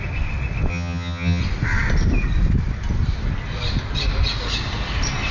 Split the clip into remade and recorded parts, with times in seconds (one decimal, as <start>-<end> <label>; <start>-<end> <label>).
0.0-0.7 recorded; 0.7-1.4 remade; 1.4-5.3 recorded